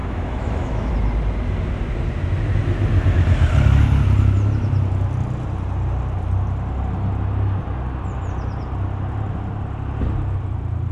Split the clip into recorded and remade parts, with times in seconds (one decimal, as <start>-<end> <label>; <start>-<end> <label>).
0.0-0.9 remade; 0.9-10.9 recorded